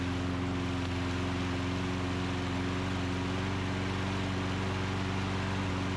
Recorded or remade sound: recorded